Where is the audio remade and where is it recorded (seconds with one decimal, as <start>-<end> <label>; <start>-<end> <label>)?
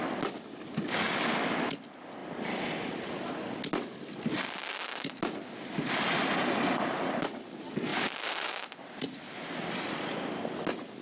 0.0-7.9 recorded; 7.9-10.4 remade; 10.4-11.0 recorded